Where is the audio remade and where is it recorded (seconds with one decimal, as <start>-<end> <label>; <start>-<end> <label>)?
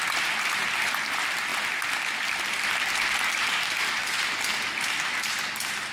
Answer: 0.0-5.9 recorded